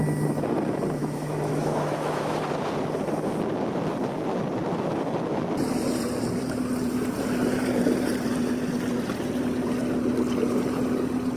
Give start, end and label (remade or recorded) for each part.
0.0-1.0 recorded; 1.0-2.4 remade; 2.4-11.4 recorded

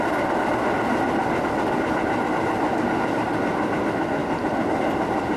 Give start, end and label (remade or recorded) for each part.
0.0-5.4 recorded

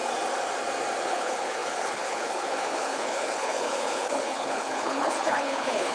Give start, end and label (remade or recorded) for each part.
0.0-1.0 recorded; 1.0-5.9 remade

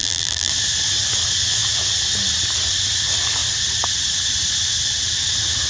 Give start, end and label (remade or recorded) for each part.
0.0-0.5 remade; 0.5-5.7 recorded

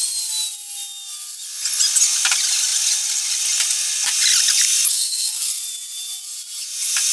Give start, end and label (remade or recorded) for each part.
0.0-4.9 recorded; 4.9-5.6 remade; 5.6-7.1 recorded

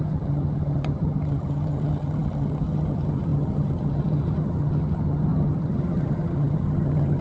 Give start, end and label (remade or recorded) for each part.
0.0-7.2 remade